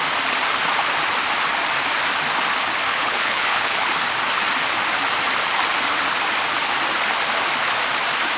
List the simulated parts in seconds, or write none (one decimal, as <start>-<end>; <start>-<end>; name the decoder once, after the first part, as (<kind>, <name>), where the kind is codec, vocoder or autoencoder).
2.9-3.9 (codec, HILCodec)